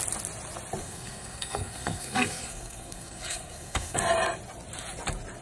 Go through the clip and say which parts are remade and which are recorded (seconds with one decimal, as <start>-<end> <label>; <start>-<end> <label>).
0.0-0.8 recorded; 0.8-4.0 remade; 4.0-5.4 recorded